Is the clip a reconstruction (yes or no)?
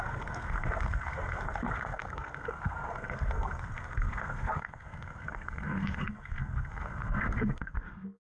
yes